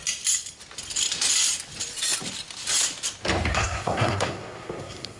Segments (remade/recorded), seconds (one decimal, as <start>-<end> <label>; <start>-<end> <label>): 0.0-3.5 recorded; 3.5-5.2 remade